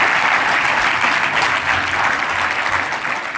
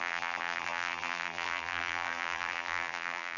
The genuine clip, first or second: first